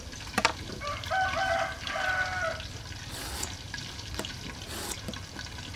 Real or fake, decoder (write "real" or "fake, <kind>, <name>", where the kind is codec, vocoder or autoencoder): real